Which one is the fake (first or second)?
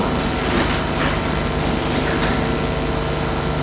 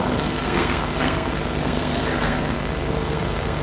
second